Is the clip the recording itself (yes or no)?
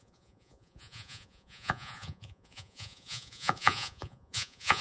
no